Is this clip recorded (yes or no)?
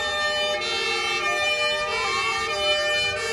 yes